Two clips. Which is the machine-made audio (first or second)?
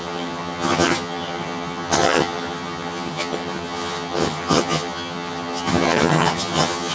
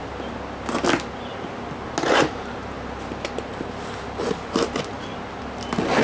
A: first